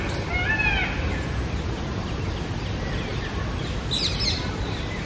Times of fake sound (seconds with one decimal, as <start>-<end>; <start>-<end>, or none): none